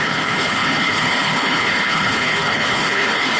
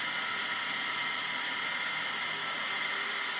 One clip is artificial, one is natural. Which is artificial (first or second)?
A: first